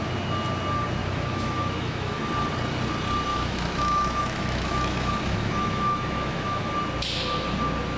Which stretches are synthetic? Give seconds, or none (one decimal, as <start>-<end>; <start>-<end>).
1.0-2.2; 3.3-6.7